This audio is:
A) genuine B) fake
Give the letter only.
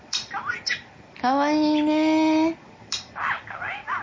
A